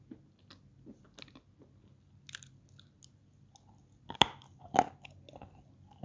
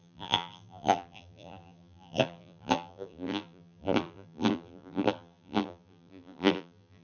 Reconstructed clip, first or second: second